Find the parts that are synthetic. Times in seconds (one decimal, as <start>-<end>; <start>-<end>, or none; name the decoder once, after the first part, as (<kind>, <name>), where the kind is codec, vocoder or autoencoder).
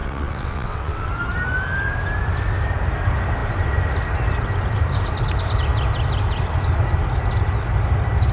0.0-1.1 (vocoder, WaveNeXt)